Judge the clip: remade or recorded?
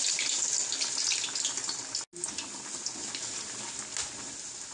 recorded